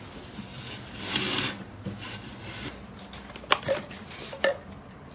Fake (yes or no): no